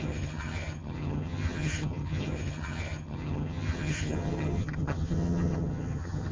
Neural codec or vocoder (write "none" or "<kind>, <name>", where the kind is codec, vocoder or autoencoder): vocoder, HiFi-GAN